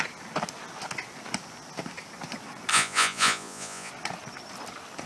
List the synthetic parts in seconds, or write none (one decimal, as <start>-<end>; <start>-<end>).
2.7-3.9